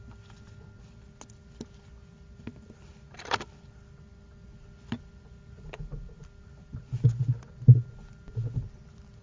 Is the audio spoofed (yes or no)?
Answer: no